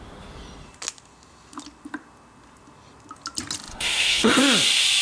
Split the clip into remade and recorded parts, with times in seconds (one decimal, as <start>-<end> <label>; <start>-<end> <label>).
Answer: 0.0-3.7 recorded; 3.7-4.4 remade; 4.4-5.0 recorded

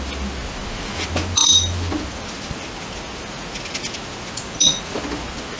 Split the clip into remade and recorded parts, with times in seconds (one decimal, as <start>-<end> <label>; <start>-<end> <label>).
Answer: 0.0-5.6 recorded